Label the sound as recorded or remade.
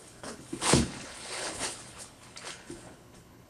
remade